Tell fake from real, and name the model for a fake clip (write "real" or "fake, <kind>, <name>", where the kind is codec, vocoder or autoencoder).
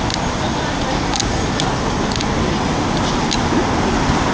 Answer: real